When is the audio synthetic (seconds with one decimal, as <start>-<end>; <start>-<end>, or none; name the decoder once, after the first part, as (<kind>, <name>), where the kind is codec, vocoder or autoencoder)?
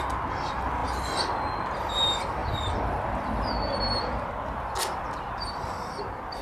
none